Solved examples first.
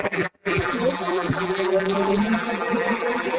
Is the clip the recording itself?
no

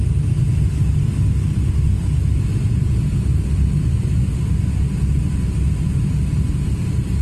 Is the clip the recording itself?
yes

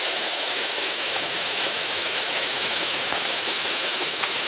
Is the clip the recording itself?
no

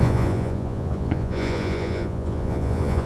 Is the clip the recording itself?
no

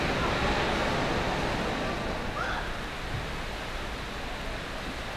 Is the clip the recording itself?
yes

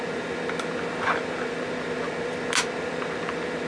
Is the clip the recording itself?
yes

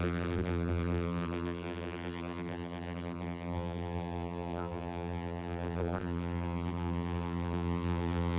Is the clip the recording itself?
no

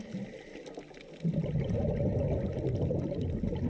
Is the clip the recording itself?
yes